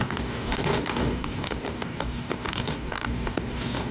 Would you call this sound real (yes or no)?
no